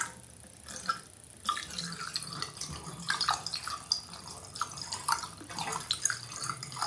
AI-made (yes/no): no